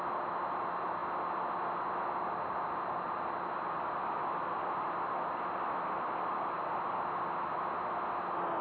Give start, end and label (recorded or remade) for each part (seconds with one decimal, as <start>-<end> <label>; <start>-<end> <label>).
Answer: 0.0-8.6 recorded